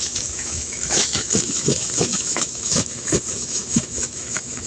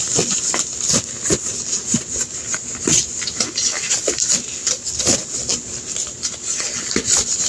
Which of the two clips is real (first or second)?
second